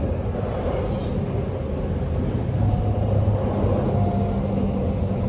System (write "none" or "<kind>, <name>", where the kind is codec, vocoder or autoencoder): none